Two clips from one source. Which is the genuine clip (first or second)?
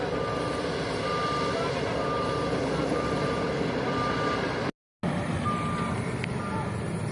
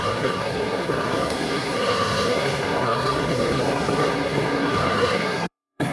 first